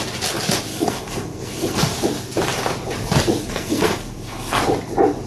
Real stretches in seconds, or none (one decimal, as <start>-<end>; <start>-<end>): 0.0-0.7; 1.8-3.4; 4.6-5.3